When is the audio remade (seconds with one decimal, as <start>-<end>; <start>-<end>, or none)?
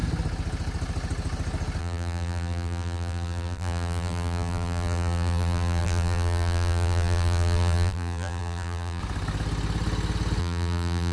1.8-9.0; 10.4-11.1